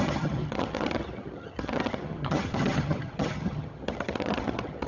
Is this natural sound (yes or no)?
no